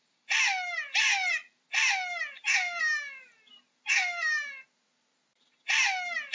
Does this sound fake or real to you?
real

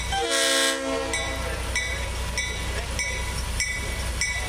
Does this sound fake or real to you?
real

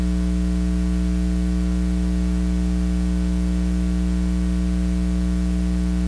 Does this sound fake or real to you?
real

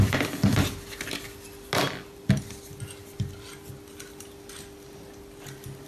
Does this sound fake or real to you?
real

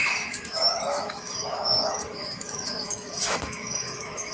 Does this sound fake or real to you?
fake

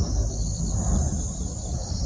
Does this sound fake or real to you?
real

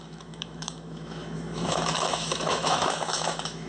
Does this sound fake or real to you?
fake